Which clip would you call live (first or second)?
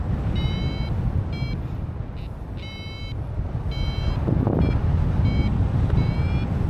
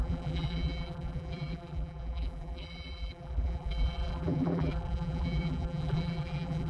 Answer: first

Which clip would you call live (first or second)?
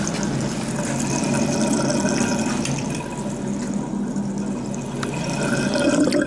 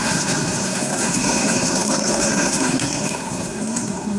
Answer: first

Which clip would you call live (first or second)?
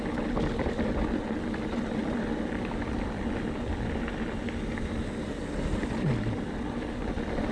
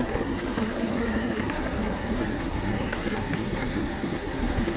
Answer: first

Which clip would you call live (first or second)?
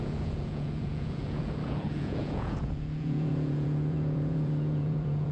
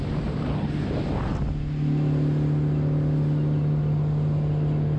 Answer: second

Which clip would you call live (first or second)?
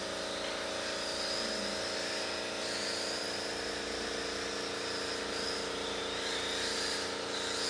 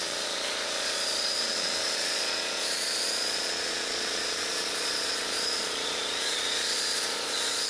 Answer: first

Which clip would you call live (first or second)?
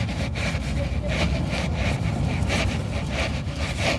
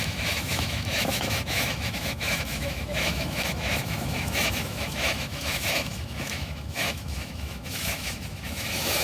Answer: first